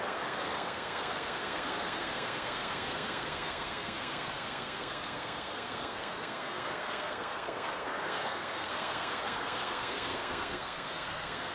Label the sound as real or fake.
fake